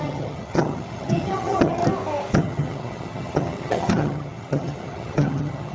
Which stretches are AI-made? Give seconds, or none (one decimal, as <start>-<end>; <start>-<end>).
0.0-1.8; 2.3-5.7